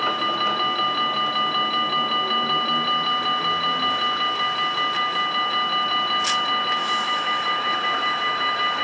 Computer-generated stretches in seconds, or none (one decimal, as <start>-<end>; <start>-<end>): 6.8-8.8

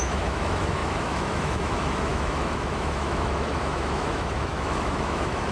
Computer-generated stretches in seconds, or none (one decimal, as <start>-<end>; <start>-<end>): 0.0-5.5

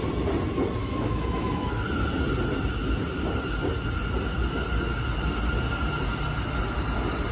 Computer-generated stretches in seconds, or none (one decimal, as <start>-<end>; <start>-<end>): 0.8-1.7

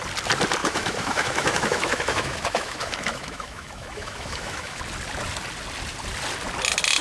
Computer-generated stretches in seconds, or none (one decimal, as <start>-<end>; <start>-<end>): 0.6-4.8

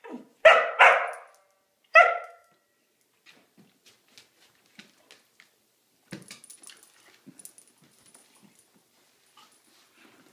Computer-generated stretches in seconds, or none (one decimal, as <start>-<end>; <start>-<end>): 1.9-2.5

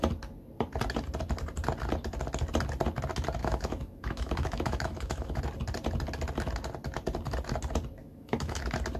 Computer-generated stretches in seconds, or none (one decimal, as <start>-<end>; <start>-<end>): 3.4-5.4; 8.0-8.6

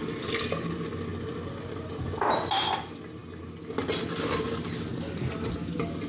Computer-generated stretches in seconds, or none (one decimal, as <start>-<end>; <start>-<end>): none

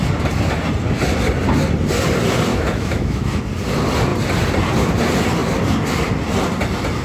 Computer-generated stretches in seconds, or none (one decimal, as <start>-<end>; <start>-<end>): 2.5-3.4